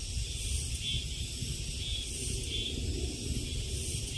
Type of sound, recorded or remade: recorded